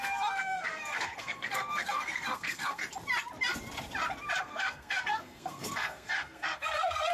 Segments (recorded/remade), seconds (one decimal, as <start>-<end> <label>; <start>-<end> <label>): 0.0-2.8 remade; 2.8-4.4 recorded; 4.4-7.1 remade